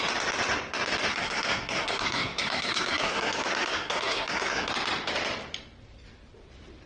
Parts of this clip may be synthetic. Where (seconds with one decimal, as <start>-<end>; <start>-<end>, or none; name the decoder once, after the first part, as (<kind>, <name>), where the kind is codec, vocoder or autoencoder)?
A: 1.1-4.7 (codec, SNAC)